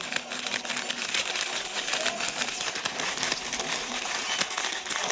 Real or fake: real